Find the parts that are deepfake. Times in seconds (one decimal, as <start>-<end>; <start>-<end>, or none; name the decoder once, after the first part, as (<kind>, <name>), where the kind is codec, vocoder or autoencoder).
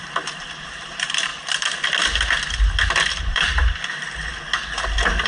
0.0-1.3 (vocoder, BigVGAN v2); 3.2-4.3